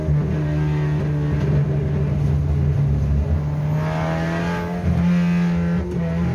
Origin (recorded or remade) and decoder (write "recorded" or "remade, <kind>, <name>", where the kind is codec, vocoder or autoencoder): recorded